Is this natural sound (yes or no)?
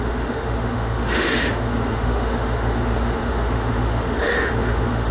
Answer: no